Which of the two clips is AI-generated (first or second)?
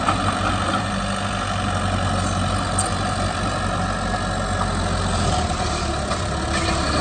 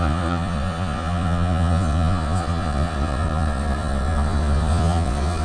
second